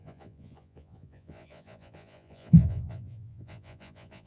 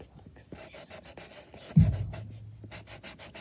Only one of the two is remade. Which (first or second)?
first